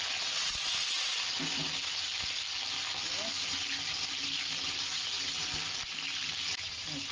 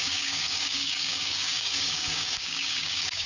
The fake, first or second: second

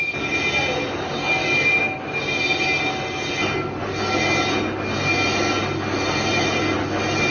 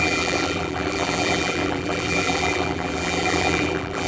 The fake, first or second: second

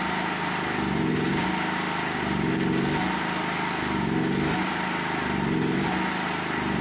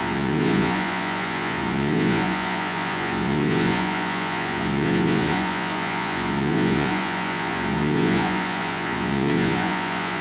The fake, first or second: second